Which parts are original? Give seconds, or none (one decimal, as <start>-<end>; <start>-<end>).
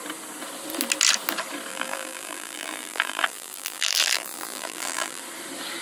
0.0-1.7; 5.2-5.8